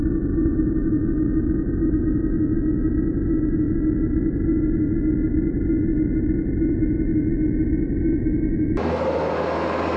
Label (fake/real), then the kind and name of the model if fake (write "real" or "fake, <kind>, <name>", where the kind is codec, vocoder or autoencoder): real